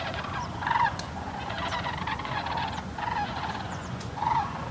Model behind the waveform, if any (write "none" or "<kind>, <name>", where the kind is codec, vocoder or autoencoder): vocoder, Vocos